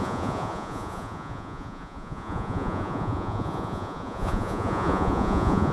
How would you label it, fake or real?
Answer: fake